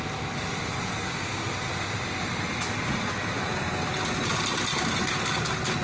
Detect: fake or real real